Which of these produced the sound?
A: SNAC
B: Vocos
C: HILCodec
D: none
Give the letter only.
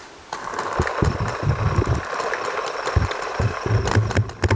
D